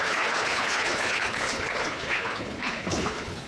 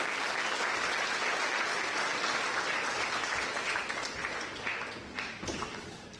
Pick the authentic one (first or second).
second